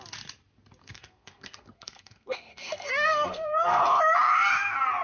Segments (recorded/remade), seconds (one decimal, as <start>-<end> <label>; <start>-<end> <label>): 0.0-0.8 recorded; 0.8-3.8 remade; 3.8-5.0 recorded